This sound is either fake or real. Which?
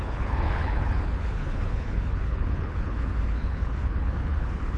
fake